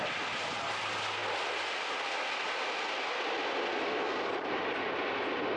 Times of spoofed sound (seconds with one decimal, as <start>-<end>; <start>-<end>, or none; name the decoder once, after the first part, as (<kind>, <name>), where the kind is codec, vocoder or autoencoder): none